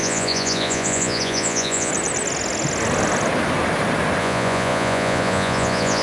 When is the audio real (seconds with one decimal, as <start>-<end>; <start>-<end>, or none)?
1.9-4.2